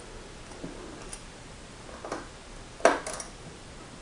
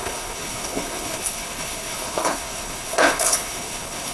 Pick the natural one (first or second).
first